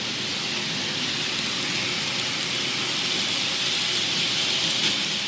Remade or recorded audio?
recorded